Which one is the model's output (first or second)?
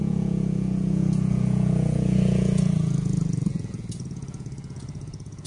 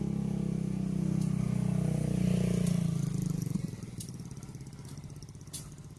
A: first